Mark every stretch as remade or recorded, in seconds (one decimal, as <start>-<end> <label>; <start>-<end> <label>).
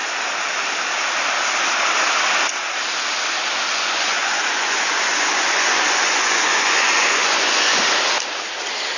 0.0-3.7 recorded; 3.7-7.8 remade; 7.8-9.0 recorded